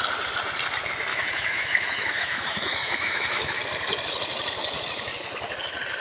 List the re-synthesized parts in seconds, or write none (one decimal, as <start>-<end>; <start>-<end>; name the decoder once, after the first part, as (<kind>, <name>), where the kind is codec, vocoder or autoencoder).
1.1-3.6 (autoencoder, DAC-VAE)